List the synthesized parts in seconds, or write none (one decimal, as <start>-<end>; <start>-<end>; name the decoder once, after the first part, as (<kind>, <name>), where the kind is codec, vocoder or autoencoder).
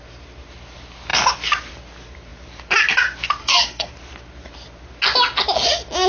3.4-3.9 (codec, SNAC)